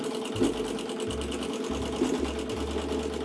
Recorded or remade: recorded